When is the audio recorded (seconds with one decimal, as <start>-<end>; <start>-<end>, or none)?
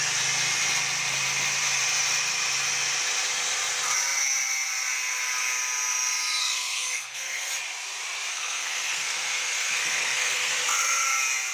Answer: 0.0-6.4; 7.5-8.3; 10.5-11.5